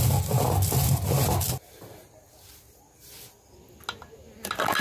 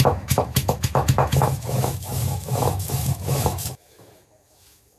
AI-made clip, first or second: second